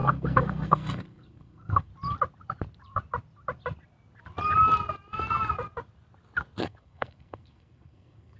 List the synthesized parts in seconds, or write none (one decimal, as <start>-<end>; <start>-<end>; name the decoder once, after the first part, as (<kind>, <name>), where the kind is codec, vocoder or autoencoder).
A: 0.0-1.9 (codec, SNAC); 6.6-8.4